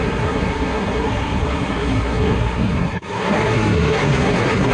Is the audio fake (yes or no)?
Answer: yes